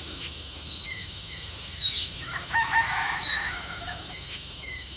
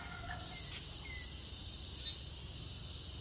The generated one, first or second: first